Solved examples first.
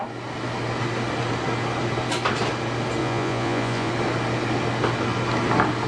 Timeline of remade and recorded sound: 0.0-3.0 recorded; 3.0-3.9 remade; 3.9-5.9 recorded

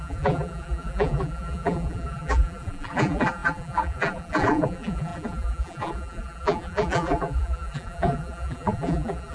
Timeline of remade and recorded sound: 0.0-9.3 remade